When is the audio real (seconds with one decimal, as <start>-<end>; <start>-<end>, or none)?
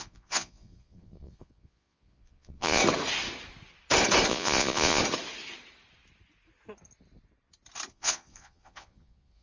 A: 2.8-4.3; 5.0-7.9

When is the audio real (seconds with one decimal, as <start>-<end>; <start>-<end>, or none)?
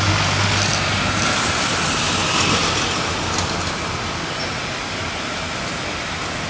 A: 0.0-6.5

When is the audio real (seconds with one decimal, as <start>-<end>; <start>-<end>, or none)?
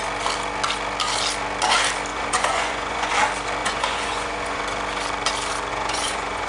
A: 0.0-2.1; 3.1-3.6; 4.6-5.7